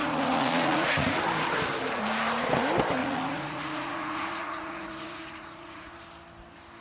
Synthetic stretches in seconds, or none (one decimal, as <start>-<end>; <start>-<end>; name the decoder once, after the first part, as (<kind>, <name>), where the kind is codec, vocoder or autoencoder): 0.0-1.2 (vocoder, Vocos); 3.0-5.9